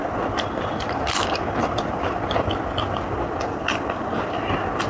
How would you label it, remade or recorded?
remade